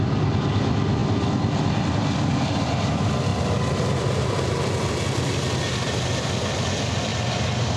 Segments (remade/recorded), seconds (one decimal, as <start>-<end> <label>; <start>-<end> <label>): 0.0-7.8 recorded